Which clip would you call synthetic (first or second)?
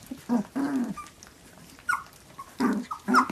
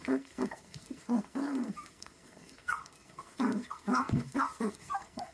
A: second